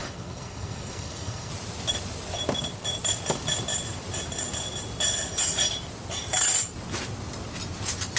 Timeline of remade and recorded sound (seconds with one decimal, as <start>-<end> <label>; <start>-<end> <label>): 0.0-1.5 remade; 1.5-8.2 recorded